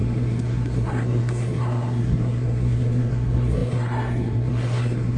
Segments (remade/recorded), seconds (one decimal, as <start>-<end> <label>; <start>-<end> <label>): 0.0-5.2 remade